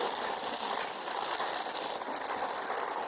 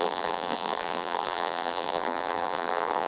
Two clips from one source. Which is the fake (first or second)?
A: second